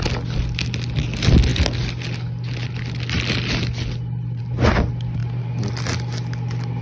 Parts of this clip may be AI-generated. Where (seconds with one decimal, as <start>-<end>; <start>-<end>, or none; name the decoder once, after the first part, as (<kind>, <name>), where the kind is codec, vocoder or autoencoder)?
none